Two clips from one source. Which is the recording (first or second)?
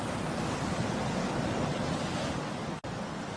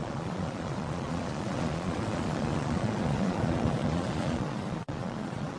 first